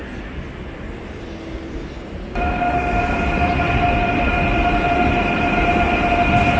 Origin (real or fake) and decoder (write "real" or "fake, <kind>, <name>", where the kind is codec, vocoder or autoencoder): real